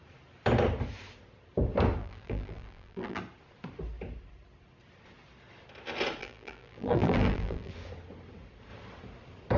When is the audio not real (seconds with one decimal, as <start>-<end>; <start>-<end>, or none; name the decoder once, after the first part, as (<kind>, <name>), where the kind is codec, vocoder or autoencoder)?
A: 2.0-3.2 (vocoder, BigVGAN v2); 6.2-7.7